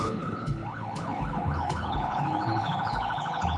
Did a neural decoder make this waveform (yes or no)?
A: yes